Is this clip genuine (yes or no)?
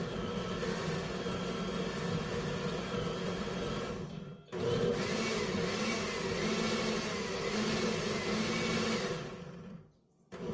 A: yes